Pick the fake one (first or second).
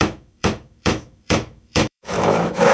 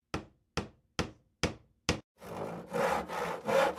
first